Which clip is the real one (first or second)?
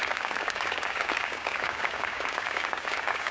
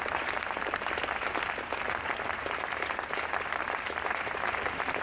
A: second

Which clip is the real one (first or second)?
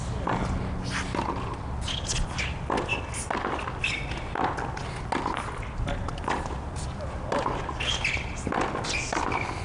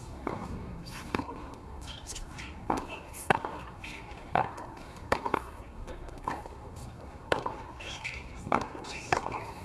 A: first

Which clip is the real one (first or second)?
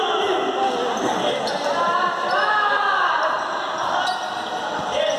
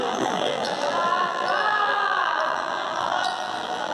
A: first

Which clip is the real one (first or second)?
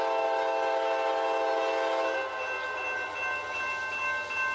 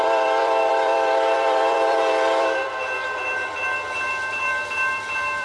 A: first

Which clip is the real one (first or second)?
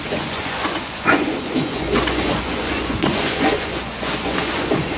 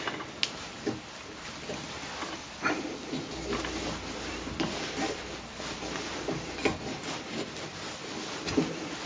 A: second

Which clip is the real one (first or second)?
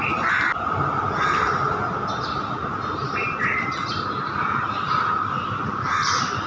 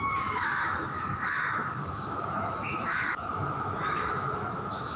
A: first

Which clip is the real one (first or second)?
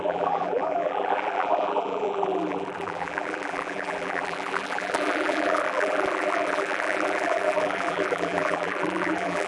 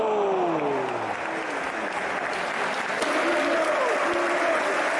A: second